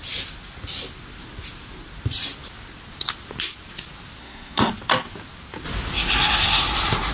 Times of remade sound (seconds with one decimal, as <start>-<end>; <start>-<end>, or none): 4.2-4.7